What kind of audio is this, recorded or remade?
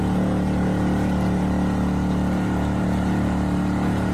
remade